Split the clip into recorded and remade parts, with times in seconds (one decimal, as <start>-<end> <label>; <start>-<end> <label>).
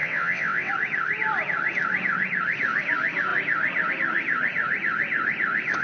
0.0-0.7 remade; 0.7-5.8 recorded